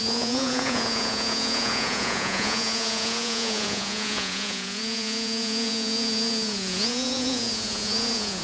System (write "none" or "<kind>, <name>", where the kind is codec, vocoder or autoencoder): vocoder, Vocos